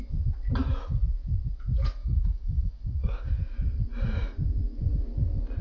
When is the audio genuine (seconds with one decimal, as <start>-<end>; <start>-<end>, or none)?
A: 0.0-2.0; 3.3-5.6

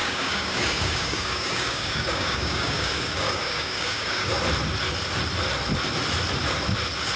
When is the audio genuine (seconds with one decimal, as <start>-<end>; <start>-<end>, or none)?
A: 4.3-7.2

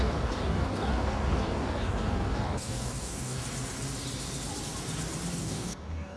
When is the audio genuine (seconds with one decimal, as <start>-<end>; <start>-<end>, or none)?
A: 3.4-5.4

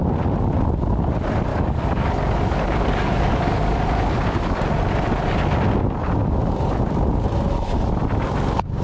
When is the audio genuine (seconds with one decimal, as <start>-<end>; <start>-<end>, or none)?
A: 0.0-1.5; 3.8-8.8

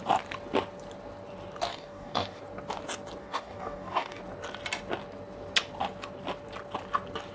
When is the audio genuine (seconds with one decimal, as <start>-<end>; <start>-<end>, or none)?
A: 0.0-1.7; 2.4-3.2; 4.2-7.3